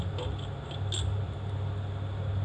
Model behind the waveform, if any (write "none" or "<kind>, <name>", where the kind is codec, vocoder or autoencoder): none